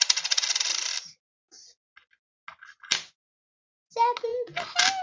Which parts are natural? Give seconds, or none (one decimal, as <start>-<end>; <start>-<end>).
0.0-5.0